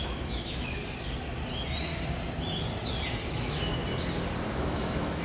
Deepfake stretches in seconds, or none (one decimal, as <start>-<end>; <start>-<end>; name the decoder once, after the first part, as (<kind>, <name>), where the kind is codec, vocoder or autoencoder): 0.0-0.8 (autoencoder, DAC-VAE); 3.3-3.8; 4.5-5.2